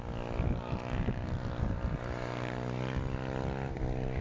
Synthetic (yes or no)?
no